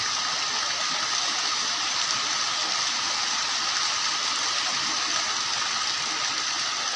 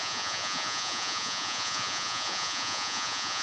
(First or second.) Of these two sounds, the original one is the first